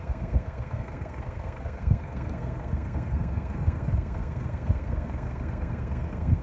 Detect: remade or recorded remade